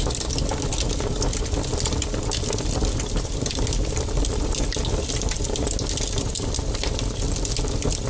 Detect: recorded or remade recorded